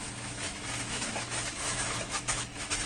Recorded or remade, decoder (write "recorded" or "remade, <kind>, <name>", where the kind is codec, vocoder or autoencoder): remade, autoencoder, DAC-VAE